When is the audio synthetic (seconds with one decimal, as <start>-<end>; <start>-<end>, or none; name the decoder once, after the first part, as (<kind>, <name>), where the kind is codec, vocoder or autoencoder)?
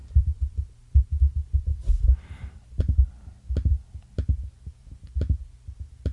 0.0-1.2 (vocoder, BigVGAN v2)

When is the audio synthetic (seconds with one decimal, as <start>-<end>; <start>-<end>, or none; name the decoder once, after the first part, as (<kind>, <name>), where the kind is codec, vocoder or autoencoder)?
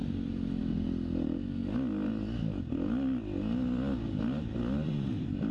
none